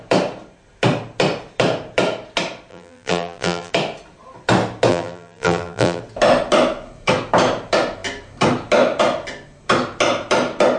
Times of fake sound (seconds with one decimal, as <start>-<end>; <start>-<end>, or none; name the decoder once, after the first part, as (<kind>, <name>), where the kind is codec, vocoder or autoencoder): 2.7-3.7 (vocoder, BigVGAN v2); 4.9-6.0